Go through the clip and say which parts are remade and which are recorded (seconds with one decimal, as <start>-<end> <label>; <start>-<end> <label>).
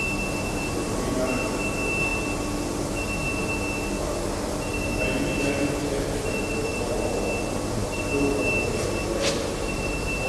0.0-10.3 recorded